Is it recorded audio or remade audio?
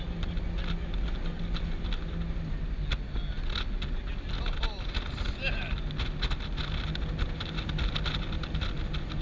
recorded